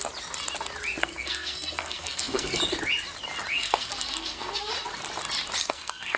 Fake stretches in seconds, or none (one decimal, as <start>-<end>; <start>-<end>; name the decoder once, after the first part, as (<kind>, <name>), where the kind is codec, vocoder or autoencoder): 1.0-2.6 (codec, SNAC); 3.5-4.7; 5.6-6.2